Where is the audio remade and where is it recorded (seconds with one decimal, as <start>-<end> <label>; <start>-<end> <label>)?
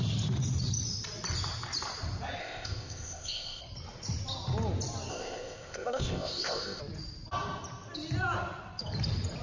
0.0-2.4 recorded; 2.4-3.6 remade; 3.6-5.1 recorded; 5.1-6.8 remade; 6.8-9.4 recorded